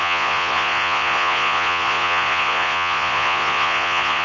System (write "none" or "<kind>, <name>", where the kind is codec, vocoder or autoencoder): vocoder, Vocos